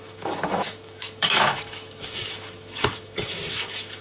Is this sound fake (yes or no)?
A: yes